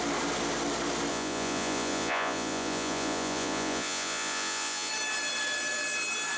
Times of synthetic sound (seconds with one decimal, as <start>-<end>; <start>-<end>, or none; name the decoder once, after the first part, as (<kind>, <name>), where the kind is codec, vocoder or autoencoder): 1.1-4.9 (vocoder, Vocos)